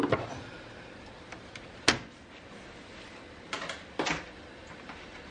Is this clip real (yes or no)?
yes